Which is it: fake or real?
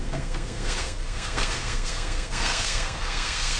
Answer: fake